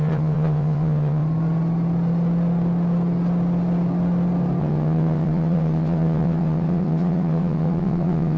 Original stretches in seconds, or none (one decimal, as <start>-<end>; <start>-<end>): 1.2-4.6